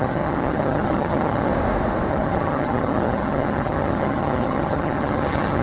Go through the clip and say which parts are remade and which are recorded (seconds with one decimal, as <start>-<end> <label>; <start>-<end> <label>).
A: 0.0-1.5 remade; 1.5-2.1 recorded; 2.1-5.6 remade